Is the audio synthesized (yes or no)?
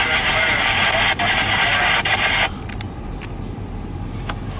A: no